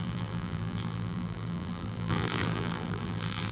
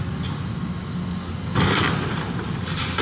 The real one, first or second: second